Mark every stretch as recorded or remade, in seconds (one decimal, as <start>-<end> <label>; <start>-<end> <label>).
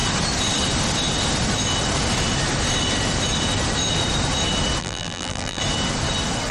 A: 0.0-4.8 recorded; 4.8-5.6 remade; 5.6-6.5 recorded